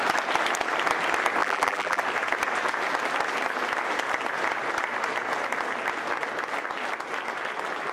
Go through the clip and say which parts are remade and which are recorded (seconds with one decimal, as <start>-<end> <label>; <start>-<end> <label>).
0.0-1.4 recorded; 1.4-2.0 remade; 2.0-7.9 recorded